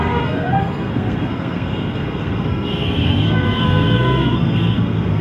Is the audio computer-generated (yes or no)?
yes